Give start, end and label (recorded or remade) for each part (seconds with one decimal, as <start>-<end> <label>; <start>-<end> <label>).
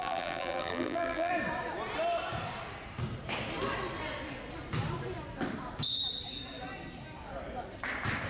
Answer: 0.0-1.3 remade; 1.3-8.3 recorded